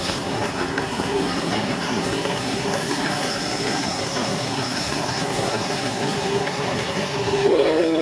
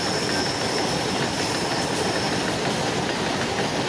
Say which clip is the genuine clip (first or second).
second